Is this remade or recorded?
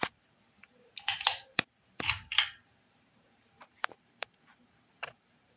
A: remade